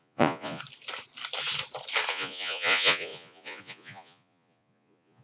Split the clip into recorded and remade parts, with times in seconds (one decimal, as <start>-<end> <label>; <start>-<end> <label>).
0.0-0.6 remade; 0.6-2.1 recorded; 2.1-5.2 remade